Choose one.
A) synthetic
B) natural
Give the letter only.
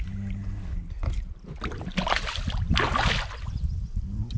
B